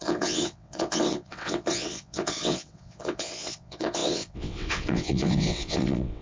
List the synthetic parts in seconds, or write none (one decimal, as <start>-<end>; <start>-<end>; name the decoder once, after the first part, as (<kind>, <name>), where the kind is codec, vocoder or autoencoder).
0.0-6.2 (vocoder, WaveNeXt)